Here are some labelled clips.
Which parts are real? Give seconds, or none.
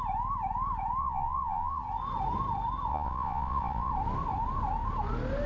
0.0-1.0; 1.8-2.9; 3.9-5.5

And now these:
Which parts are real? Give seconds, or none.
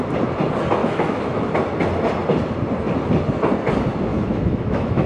0.0-0.8; 1.5-4.1